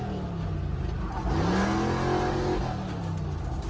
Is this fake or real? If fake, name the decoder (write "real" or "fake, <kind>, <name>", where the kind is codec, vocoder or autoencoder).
real